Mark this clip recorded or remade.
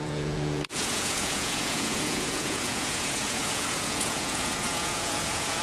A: remade